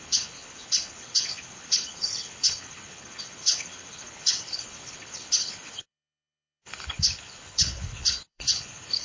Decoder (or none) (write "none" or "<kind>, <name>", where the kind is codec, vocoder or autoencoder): codec, HILCodec